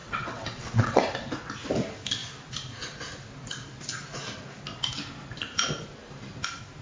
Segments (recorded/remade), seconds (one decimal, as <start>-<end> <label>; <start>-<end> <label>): 0.0-1.0 remade; 1.0-6.8 recorded